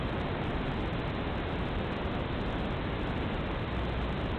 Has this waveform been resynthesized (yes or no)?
no